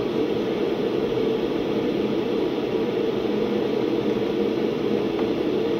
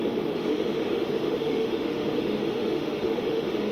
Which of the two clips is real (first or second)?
first